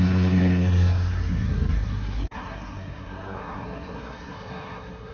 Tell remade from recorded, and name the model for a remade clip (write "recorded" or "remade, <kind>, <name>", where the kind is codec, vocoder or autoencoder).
remade, codec, SNAC